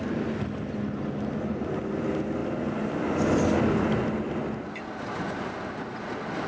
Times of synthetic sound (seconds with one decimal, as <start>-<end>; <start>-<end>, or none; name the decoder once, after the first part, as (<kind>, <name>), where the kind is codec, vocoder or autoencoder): none